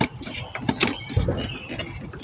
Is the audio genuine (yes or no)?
yes